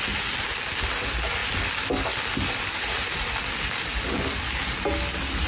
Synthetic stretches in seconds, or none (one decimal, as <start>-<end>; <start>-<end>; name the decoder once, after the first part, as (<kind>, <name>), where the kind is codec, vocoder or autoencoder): none